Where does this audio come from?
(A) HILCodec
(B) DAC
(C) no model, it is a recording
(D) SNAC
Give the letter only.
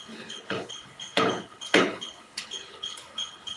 A